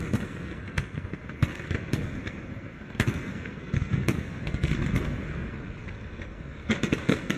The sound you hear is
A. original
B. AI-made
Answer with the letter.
B